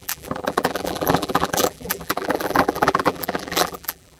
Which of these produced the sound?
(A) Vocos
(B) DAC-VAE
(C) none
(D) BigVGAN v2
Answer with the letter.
D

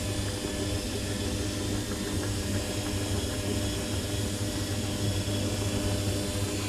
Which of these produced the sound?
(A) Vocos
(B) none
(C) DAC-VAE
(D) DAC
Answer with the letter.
B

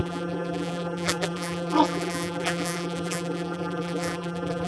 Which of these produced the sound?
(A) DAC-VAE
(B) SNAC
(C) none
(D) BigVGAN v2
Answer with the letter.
D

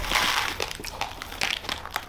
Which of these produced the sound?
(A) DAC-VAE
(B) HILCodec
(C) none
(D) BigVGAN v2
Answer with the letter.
C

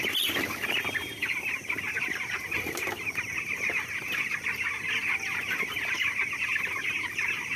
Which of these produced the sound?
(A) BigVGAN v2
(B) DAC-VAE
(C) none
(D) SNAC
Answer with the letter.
C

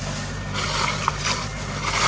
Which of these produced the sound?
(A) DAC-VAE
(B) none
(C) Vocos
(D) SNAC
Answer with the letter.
B